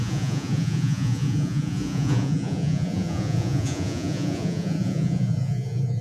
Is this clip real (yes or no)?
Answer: no